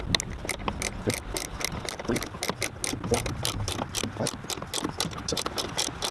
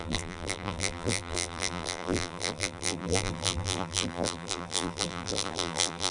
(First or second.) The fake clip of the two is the second